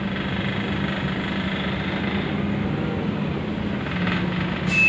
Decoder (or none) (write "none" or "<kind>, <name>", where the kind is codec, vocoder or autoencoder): none